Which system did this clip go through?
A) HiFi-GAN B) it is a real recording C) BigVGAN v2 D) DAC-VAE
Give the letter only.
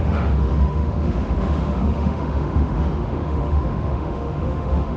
D